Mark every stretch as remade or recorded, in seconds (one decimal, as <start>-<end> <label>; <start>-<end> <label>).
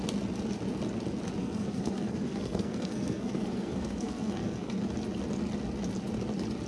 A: 0.0-1.4 recorded; 1.4-4.8 remade; 4.8-6.7 recorded